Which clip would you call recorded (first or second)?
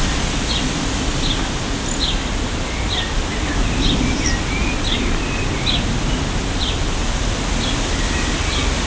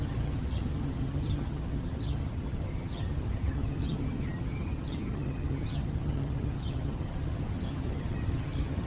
first